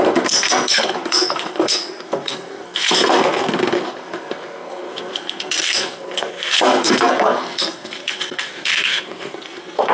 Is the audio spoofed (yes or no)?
yes